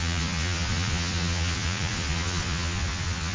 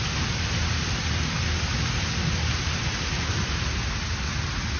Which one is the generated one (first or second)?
first